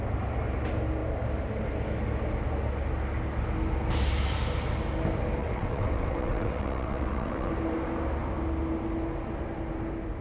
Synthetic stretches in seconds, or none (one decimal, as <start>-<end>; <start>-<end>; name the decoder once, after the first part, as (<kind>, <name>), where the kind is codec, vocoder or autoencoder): 5.4-7.5 (vocoder, WaveNeXt)